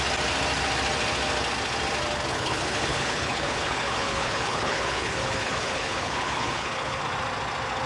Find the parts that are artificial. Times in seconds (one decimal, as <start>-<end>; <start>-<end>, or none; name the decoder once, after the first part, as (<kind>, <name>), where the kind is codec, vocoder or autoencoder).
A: 2.3-7.0 (codec, HILCodec)